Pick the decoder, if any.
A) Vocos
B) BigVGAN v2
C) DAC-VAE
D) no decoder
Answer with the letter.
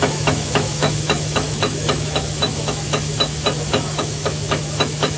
C